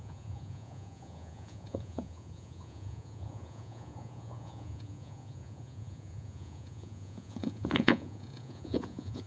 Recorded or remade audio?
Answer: remade